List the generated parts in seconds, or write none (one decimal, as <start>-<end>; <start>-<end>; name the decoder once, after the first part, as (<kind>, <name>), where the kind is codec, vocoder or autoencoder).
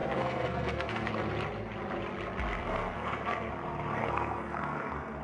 0.0-1.1 (codec, SNAC); 2.6-3.5; 4.0-5.2